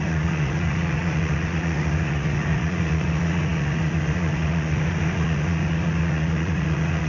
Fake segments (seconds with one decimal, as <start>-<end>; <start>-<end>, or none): 0.0-7.1